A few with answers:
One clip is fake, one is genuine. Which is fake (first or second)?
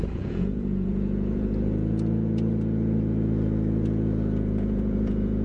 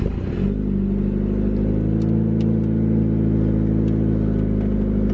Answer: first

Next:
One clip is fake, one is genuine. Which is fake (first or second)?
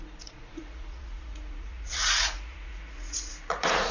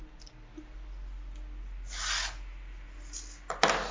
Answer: first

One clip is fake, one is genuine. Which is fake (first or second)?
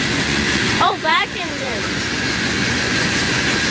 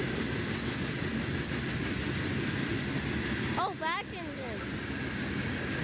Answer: first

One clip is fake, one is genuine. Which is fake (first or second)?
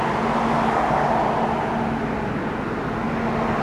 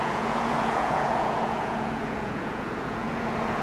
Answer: second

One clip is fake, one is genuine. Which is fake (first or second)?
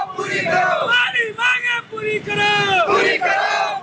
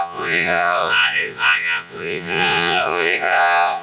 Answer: second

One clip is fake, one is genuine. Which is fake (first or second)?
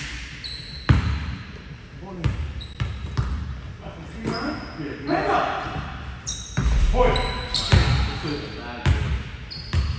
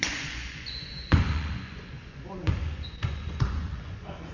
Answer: second